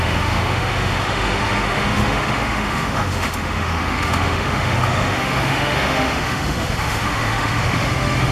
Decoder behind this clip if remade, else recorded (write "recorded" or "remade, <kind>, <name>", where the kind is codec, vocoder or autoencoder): remade, autoencoder, DAC-VAE